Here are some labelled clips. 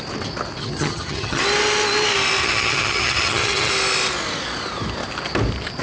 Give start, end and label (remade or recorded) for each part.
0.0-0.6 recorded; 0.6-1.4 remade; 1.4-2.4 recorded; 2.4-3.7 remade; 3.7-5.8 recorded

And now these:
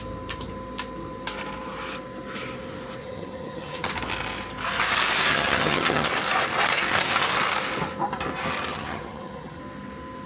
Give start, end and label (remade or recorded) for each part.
0.0-3.0 recorded; 3.0-3.9 remade; 3.9-5.3 recorded; 5.3-6.1 remade; 6.1-8.7 recorded; 8.7-9.6 remade; 9.6-10.3 recorded

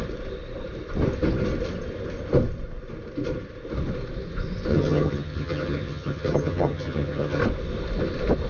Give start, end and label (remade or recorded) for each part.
0.0-4.7 recorded; 4.7-7.4 remade; 7.4-8.5 recorded

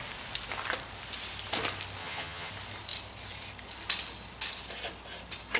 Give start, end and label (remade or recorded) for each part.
0.0-2.0 recorded; 2.0-2.5 remade; 2.5-5.6 recorded

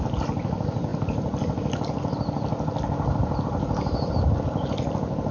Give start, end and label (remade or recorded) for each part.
0.0-5.3 recorded